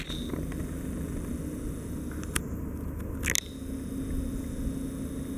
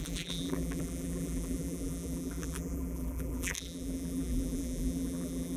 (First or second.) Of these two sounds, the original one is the first